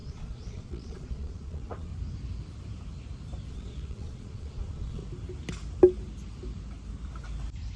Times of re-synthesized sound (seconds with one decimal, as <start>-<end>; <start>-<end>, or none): 0.0-1.9; 3.5-5.0